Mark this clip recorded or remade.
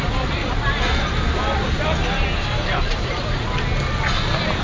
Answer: recorded